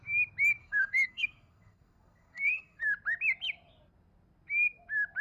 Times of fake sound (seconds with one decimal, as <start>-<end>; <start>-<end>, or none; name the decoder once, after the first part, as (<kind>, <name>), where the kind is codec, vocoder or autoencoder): 0.6-2.8 (codec, SNAC)